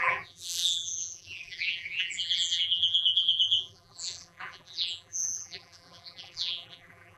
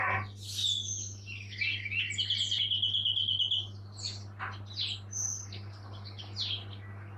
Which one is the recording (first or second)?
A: second